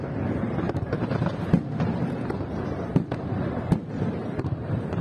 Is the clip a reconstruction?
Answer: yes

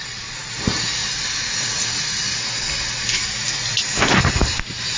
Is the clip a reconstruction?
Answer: no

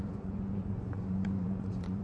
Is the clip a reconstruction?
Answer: yes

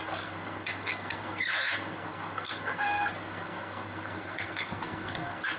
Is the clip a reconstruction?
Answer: yes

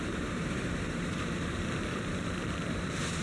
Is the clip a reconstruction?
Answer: yes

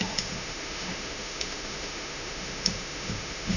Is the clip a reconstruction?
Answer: yes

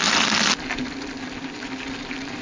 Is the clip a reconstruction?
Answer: no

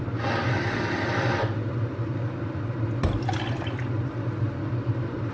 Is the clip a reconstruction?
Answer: no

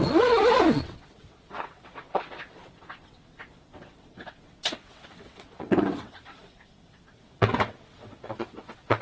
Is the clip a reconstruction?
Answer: yes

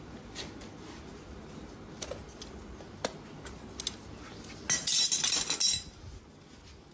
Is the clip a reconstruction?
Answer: no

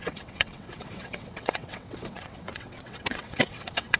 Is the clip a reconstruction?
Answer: yes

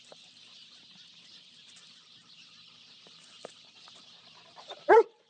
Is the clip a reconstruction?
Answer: yes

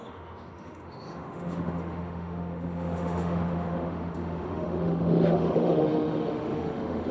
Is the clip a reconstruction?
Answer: yes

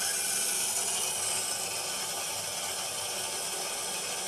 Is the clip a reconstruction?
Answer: no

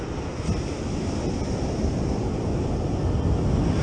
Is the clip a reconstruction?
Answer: no